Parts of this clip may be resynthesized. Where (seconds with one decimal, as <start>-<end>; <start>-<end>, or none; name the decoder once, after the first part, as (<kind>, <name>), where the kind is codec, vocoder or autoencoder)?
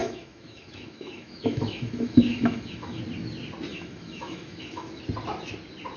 0.0-3.0 (autoencoder, DAC-VAE); 3.7-5.0